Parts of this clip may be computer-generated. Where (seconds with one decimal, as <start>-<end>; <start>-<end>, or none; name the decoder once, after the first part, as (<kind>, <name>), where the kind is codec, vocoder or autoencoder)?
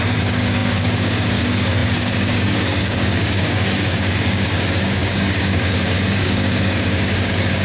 0.0-7.6 (codec, DAC)